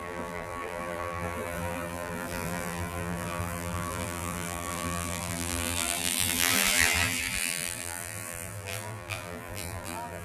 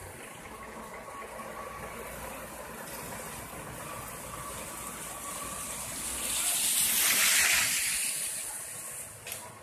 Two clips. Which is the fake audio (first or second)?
first